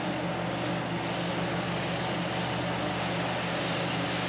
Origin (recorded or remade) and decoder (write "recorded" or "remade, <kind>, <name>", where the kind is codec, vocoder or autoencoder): recorded